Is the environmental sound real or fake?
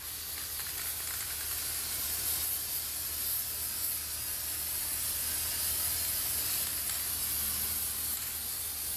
real